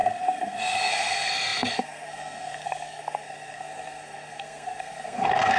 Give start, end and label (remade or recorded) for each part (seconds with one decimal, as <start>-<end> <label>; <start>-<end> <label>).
0.0-5.6 remade